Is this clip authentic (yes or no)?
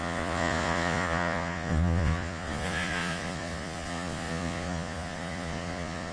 no